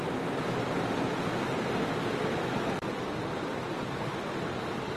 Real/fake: real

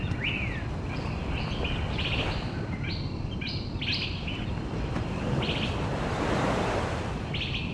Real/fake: real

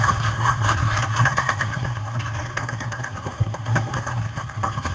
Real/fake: fake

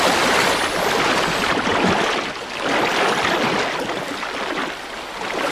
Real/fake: real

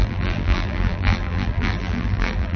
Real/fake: fake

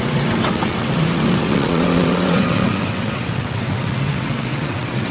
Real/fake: fake